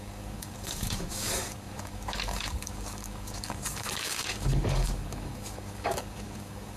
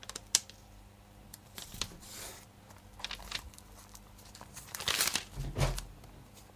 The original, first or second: second